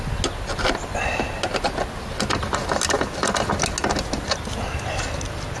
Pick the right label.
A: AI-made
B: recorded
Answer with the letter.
B